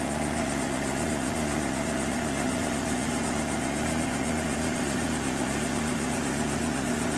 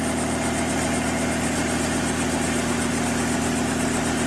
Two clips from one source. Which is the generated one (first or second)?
first